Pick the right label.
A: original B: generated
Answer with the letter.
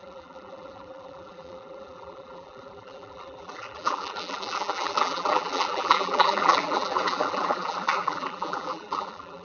B